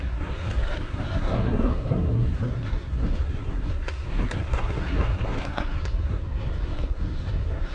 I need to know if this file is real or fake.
fake